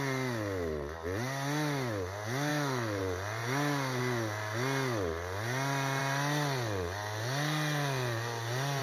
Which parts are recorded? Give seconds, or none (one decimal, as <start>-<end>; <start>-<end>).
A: 0.0-2.5; 3.0-8.8